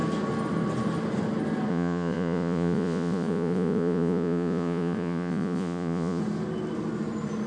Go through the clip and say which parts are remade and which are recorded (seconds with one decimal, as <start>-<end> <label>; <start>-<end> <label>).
0.0-1.7 recorded; 1.7-6.2 remade; 6.2-7.5 recorded